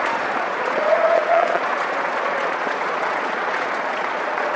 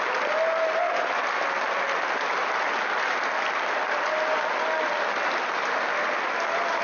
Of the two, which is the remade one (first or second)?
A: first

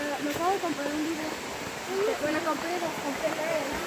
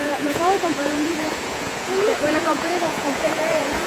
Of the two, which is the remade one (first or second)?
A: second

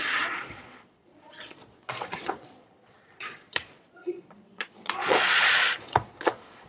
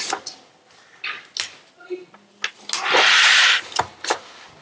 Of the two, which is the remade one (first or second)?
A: first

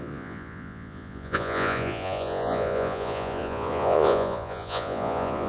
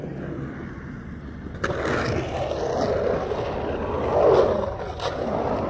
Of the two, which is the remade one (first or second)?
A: first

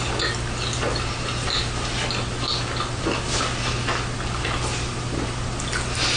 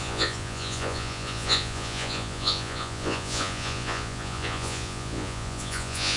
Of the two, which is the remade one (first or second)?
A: second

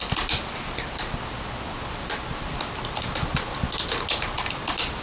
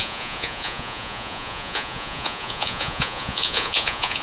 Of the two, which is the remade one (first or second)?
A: second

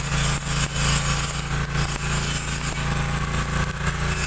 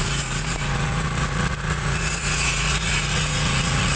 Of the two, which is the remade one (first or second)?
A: second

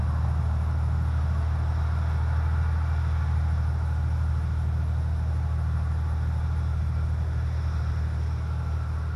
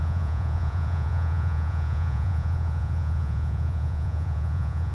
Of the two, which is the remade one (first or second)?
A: second